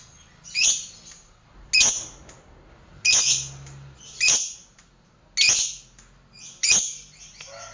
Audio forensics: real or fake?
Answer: real